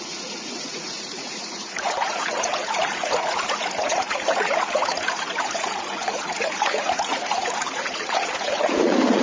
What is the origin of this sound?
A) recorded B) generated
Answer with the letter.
B